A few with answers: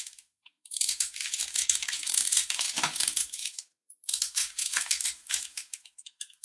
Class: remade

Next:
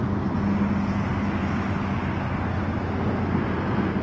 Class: recorded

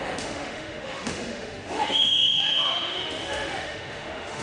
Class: remade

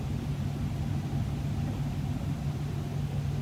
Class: recorded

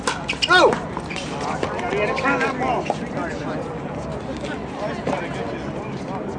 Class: recorded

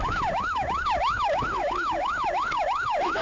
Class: remade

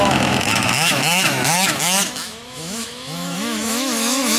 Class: remade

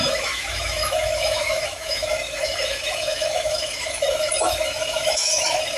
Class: remade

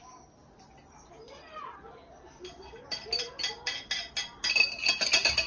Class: recorded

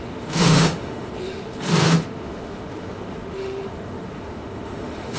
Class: remade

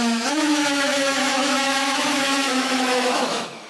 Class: remade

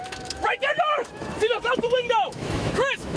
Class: remade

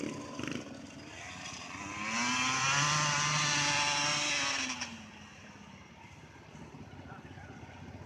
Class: recorded